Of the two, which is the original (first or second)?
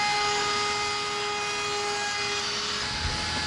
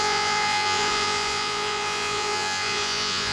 first